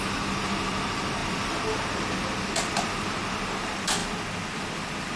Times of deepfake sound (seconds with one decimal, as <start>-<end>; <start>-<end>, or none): 0.0-4.0; 4.5-5.2